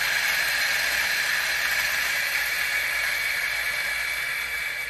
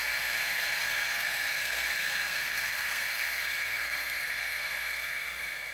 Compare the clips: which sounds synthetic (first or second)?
second